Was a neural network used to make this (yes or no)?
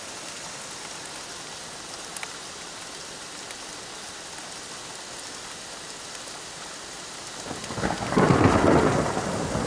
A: no